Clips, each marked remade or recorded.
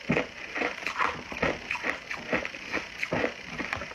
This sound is recorded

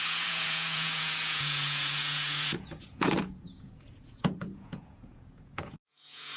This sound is remade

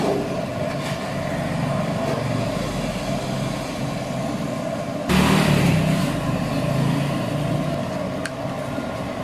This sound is recorded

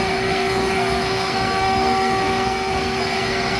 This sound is remade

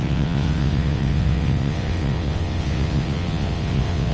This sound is remade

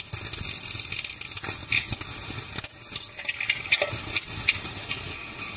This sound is recorded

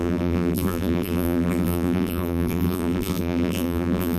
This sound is remade